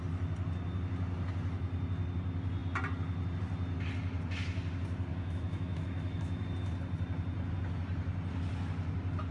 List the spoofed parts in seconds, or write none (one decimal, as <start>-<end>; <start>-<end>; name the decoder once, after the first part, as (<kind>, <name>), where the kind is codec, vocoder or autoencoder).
5.1-6.4 (autoencoder, DAC-VAE)

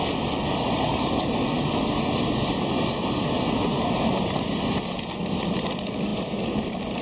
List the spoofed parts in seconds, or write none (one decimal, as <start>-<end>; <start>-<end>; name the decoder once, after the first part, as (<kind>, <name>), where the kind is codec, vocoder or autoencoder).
none